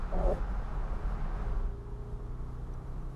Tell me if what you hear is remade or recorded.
recorded